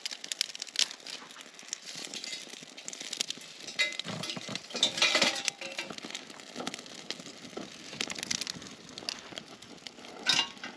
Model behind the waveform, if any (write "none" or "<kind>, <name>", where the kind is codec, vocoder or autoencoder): none